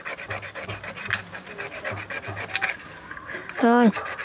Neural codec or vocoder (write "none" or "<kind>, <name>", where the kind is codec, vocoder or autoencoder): none